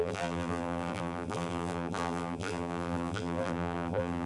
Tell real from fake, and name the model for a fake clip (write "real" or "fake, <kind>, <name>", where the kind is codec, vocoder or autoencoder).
fake, vocoder, BigVGAN v2